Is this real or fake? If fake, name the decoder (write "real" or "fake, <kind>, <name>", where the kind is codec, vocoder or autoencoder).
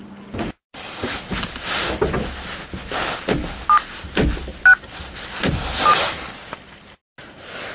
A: real